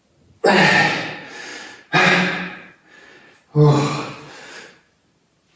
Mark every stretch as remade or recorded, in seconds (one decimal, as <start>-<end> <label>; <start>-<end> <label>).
0.0-5.6 recorded